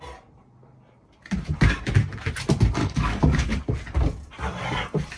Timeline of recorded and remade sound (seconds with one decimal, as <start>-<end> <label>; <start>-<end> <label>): 0.0-2.8 recorded; 2.8-3.6 remade; 3.6-5.2 recorded